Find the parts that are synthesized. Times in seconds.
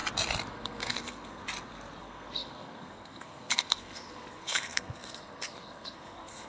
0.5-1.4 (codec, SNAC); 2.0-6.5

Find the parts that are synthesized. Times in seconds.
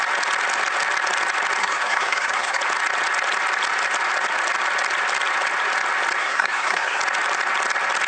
1.6-2.6 (codec, SNAC); 6.2-7.0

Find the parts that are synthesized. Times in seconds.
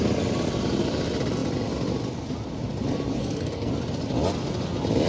3.2-3.7 (codec, SNAC)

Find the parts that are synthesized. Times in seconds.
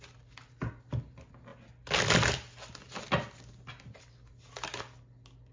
none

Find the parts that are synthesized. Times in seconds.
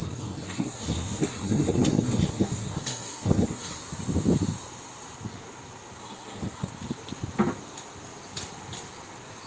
0.0-3.8 (codec, SNAC); 6.0-6.7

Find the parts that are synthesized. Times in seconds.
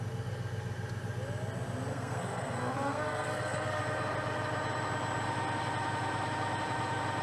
1.9-3.8 (codec, SNAC)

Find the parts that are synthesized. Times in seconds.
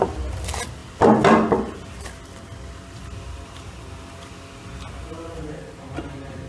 none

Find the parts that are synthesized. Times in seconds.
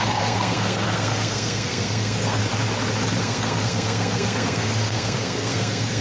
0.0-2.4 (codec, SNAC); 3.2-6.0